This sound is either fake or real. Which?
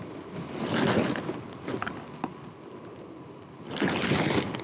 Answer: real